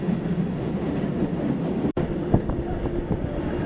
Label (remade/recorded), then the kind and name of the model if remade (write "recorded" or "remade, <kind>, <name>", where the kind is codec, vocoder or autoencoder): recorded